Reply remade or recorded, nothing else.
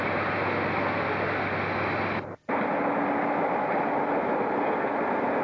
recorded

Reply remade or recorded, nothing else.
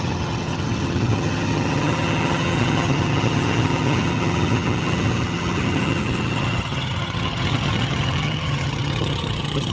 remade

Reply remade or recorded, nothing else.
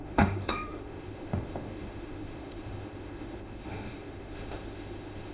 remade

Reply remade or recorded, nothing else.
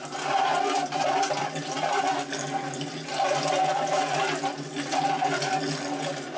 recorded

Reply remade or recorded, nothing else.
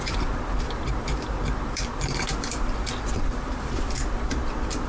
remade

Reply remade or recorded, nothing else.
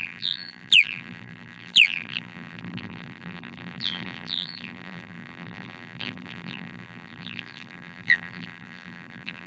remade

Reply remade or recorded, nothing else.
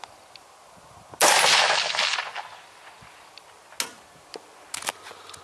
recorded